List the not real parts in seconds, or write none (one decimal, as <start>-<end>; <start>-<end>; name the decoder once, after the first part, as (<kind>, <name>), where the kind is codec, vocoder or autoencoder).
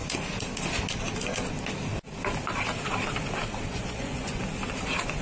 3.7-4.4 (vocoder, Vocos)